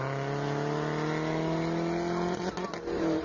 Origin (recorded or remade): recorded